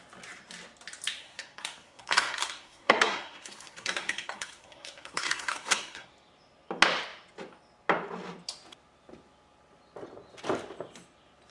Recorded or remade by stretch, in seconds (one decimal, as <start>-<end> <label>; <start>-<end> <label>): 0.0-1.2 recorded; 1.2-6.1 remade; 6.1-11.5 recorded